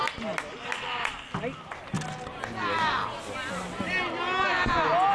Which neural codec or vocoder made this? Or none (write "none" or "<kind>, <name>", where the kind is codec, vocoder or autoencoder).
none